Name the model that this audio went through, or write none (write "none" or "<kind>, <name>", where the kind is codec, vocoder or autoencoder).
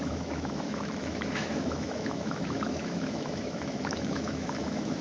autoencoder, DAC-VAE